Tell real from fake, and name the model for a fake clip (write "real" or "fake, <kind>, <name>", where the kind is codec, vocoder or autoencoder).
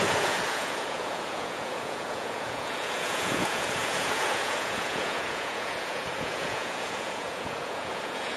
fake, vocoder, Vocos